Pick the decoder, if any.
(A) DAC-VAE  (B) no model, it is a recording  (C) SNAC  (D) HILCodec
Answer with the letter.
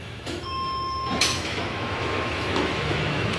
A